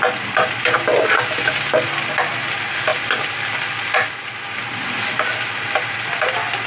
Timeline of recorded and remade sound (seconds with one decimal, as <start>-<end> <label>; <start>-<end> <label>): 0.0-6.7 recorded